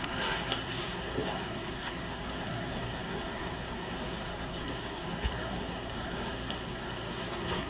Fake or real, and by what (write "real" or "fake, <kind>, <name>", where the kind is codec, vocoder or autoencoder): fake, codec, SNAC